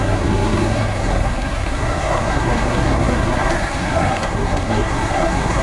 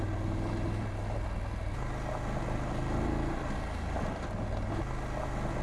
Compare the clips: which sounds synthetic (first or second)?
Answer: first